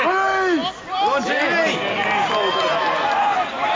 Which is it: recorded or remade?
recorded